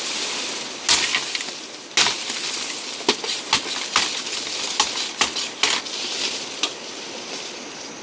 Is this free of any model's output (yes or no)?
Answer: yes